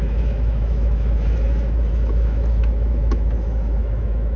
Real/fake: fake